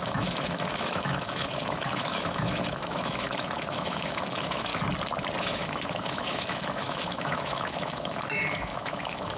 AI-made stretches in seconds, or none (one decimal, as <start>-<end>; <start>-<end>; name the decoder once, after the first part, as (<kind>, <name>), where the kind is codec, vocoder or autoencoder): 0.0-4.7 (autoencoder, DAC-VAE); 5.4-9.4